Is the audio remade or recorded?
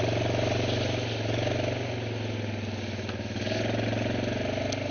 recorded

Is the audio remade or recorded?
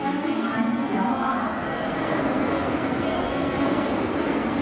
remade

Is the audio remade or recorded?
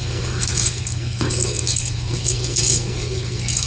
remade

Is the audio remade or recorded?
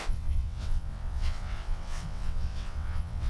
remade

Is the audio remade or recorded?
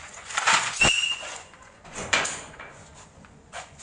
remade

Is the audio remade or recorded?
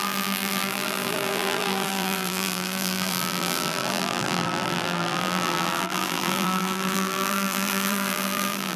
remade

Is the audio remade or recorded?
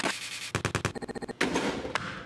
recorded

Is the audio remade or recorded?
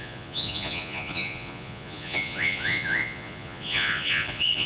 remade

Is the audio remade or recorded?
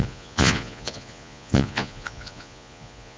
remade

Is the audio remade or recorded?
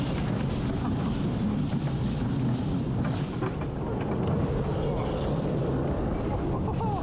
recorded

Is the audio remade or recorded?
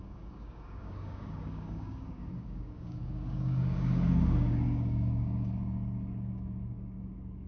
remade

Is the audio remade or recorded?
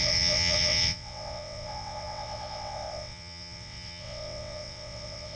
remade